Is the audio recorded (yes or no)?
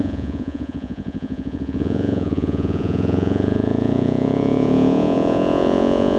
no